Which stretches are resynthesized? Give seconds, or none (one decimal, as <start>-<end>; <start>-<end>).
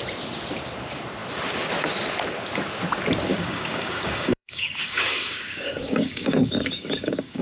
3.3-7.4